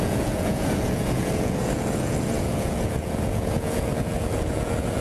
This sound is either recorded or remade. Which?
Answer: remade